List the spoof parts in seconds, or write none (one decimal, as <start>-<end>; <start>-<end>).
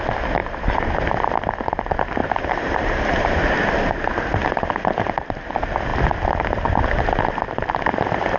0.4-1.0; 2.2-3.4